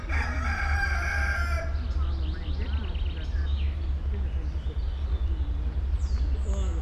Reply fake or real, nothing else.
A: real